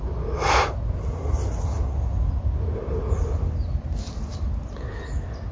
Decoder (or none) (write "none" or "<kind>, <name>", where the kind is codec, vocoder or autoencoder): none